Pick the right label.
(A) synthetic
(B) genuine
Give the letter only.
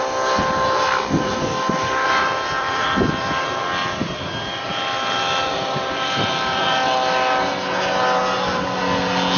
B